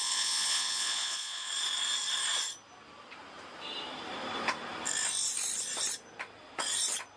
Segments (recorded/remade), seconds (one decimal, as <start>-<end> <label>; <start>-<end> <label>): 0.0-1.5 remade; 1.5-7.2 recorded